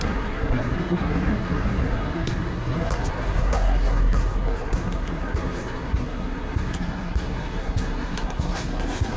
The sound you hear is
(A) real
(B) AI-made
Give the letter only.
B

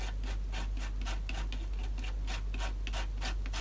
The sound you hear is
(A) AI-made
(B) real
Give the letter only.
B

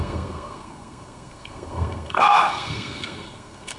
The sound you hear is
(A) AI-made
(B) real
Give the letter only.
A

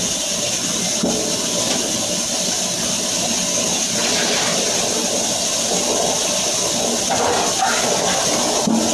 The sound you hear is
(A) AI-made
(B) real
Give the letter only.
B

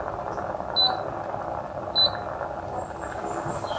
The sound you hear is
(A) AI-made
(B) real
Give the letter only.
B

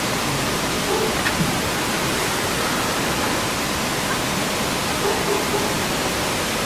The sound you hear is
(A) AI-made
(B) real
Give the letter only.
B